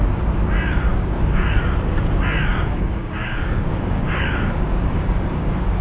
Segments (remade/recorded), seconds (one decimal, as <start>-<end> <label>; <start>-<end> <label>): 0.0-0.9 recorded; 0.9-1.4 remade; 1.4-2.5 recorded; 2.5-5.8 remade